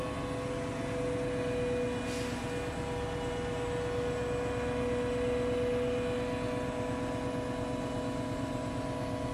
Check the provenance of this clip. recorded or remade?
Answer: recorded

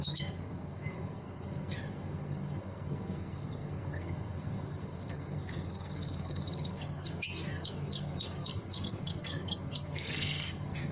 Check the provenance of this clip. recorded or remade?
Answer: remade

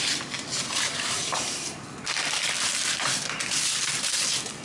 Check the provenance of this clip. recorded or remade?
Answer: recorded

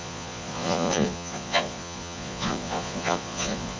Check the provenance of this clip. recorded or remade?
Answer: remade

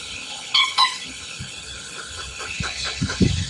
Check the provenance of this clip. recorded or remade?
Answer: remade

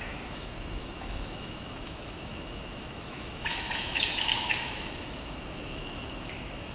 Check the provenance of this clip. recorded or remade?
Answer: remade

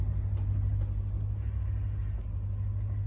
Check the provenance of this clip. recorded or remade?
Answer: recorded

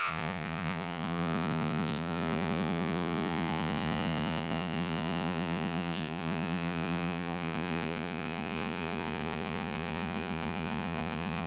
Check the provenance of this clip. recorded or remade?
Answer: remade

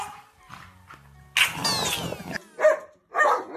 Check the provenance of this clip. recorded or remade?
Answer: recorded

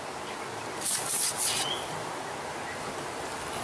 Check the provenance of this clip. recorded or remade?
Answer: recorded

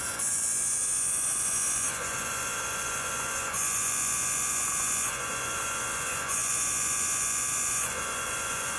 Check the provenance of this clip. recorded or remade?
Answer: remade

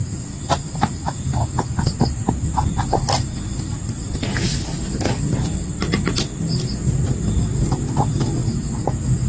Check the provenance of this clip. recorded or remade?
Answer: recorded